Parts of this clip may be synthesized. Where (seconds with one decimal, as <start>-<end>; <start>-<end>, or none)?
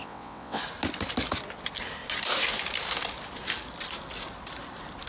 0.0-0.6